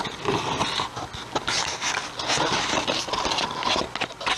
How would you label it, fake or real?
real